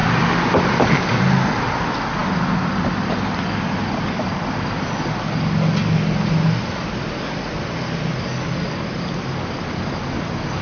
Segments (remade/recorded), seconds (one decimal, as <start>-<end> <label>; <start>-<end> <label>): 0.0-10.6 recorded